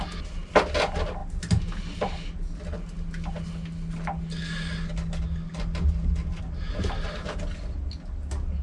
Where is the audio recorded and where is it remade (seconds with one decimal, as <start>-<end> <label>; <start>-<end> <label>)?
0.0-8.6 recorded